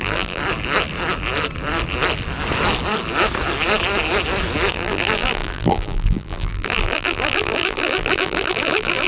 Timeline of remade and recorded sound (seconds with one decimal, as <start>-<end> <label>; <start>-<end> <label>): 0.0-0.4 remade; 0.4-4.7 recorded; 4.7-9.1 remade